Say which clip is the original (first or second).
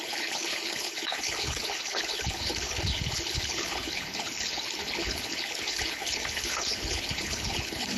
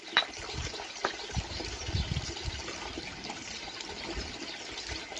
second